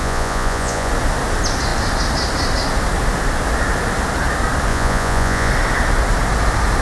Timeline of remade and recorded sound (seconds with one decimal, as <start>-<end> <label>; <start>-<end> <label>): 0.0-0.9 remade; 0.9-4.7 recorded; 4.7-5.5 remade; 5.5-6.8 recorded